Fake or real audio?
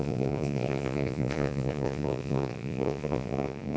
fake